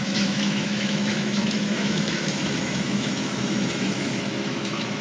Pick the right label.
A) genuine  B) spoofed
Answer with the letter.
B